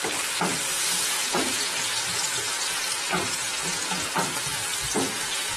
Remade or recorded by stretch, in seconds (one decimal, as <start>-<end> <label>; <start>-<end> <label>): 0.0-0.7 recorded; 0.7-4.1 remade; 4.1-4.9 recorded; 4.9-5.6 remade